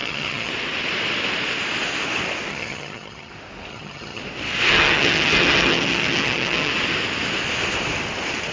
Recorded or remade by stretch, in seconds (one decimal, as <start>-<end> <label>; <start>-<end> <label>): 0.0-0.5 remade; 0.5-2.5 recorded; 2.5-3.3 remade; 3.3-3.7 recorded; 3.7-4.2 remade; 4.2-4.7 recorded; 4.7-6.7 remade; 6.7-8.5 recorded